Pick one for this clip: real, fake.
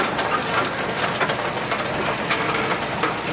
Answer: real